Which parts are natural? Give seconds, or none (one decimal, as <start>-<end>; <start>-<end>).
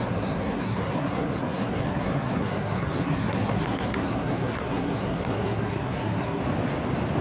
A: 6.4-7.2